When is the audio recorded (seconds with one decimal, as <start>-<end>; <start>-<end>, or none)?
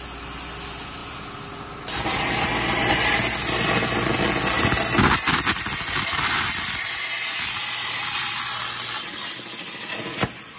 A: 0.0-10.6